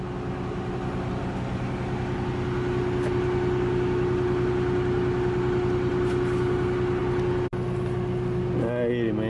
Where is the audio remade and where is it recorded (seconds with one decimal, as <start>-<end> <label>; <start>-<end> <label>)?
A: 0.0-9.3 recorded